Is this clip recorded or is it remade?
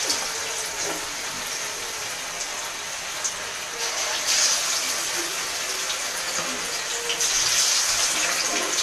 recorded